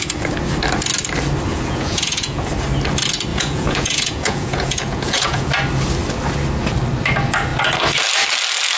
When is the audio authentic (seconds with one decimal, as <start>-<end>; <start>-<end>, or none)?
0.0-1.5; 2.5-3.3; 5.5-8.8